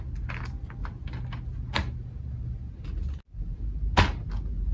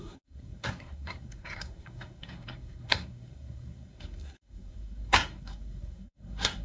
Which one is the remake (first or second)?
second